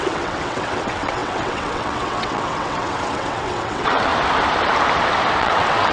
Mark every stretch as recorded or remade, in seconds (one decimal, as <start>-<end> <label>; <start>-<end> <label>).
0.0-4.1 remade; 4.1-5.4 recorded; 5.4-5.9 remade